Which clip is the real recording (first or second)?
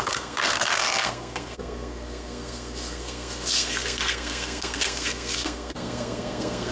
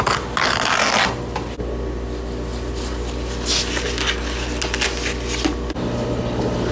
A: second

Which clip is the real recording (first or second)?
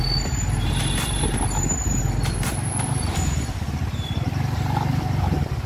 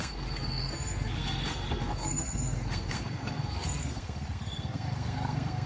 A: first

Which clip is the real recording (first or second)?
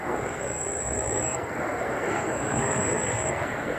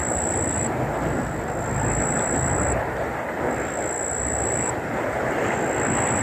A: second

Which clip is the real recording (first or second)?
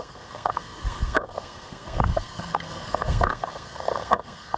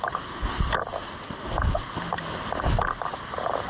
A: second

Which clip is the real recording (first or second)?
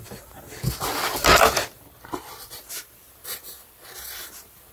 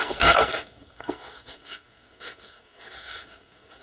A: first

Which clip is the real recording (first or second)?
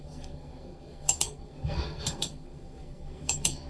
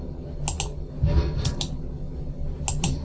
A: second